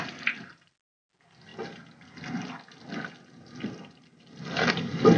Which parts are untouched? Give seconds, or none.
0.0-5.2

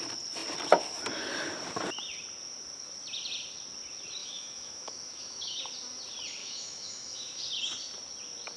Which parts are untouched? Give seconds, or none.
0.0-4.2; 5.6-6.4; 7.4-8.6

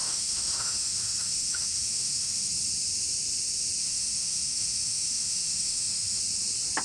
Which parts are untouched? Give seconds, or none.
2.5-3.8; 6.2-6.8

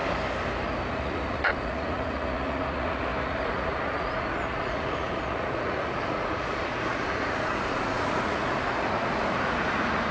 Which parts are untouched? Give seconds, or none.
0.0-0.9

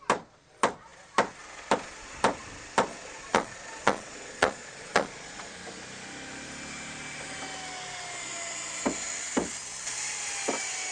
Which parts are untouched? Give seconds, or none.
0.0-2.9; 5.5-10.9

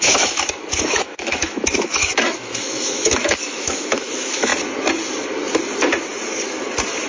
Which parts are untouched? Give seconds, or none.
4.5-7.1

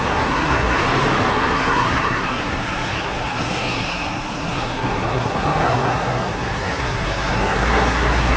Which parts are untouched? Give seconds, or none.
0.8-1.3